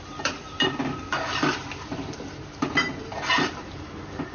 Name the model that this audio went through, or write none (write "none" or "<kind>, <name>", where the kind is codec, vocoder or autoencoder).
vocoder, BigVGAN v2